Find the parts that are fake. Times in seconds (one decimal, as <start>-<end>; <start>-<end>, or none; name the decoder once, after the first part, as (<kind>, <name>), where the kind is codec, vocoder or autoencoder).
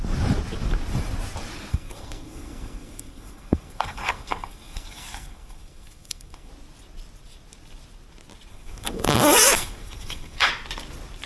1.7-6.5 (codec, SNAC); 8.5-10.5